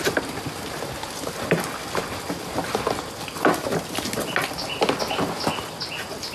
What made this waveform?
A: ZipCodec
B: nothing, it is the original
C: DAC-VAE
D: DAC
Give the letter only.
B